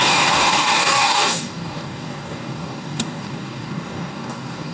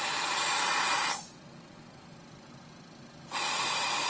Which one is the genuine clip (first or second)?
second